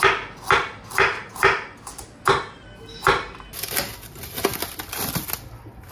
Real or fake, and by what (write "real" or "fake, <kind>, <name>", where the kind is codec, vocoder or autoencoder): real